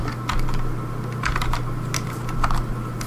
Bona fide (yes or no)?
yes